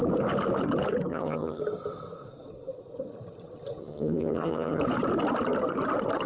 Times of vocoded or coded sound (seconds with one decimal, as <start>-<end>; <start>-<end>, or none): 1.1-1.6; 3.8-4.8